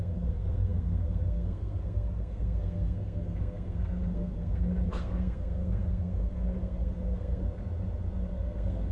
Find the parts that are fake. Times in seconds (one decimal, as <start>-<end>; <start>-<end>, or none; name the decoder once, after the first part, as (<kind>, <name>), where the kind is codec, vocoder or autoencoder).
0.0-7.4 (codec, SNAC); 8.3-8.9